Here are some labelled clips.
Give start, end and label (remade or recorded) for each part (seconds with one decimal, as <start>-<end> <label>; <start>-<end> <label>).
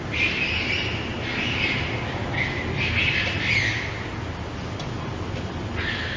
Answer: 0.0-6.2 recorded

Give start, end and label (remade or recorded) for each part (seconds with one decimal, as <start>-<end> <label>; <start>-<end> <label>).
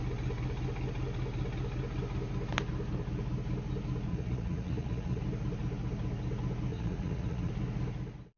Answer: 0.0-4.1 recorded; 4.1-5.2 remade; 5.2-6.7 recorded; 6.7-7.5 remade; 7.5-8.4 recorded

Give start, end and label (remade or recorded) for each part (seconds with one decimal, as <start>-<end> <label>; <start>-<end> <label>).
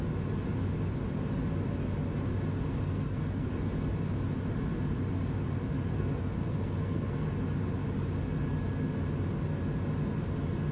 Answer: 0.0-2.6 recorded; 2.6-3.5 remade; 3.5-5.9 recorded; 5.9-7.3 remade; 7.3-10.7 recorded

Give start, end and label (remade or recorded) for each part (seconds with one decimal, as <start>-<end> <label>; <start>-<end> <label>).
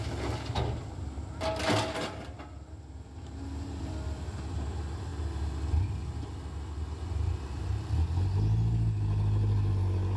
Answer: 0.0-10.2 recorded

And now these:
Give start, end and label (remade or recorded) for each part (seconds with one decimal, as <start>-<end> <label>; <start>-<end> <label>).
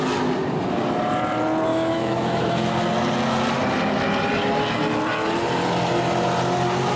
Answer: 0.0-1.7 recorded; 1.7-2.7 remade; 2.7-7.0 recorded